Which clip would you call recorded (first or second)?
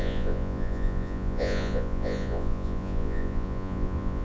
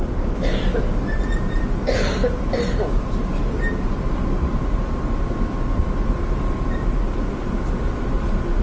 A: second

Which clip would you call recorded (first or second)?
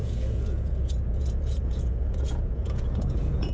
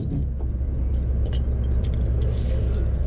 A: second